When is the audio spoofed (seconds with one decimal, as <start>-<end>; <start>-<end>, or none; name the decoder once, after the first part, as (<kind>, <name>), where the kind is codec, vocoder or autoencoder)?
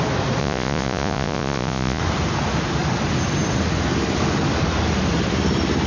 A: 0.4-2.0 (vocoder, Vocos)